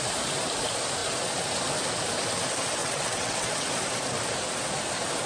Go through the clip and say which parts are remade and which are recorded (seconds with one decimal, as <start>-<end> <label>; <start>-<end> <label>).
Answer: 0.0-2.8 recorded; 2.8-3.7 remade; 3.7-5.3 recorded